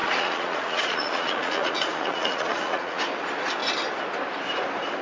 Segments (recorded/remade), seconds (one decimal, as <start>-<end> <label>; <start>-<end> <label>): 0.0-3.0 remade; 3.0-5.0 recorded

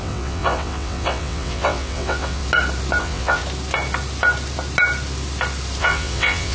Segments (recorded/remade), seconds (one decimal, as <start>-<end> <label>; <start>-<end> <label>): 0.0-2.4 remade; 2.4-3.0 recorded; 3.0-3.4 remade; 3.4-5.8 recorded; 5.8-6.5 remade

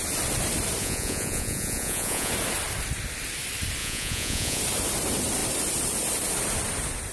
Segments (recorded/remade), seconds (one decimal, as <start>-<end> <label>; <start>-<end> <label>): 0.0-0.8 recorded; 0.8-2.3 remade; 2.3-3.8 recorded; 3.8-4.6 remade; 4.6-7.1 recorded